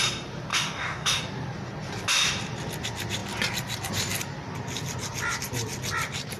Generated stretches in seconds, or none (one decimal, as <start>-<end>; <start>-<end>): 0.5-1.2